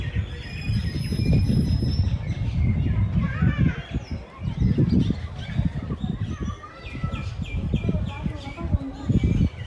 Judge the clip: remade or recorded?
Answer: recorded